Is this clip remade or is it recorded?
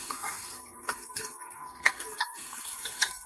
remade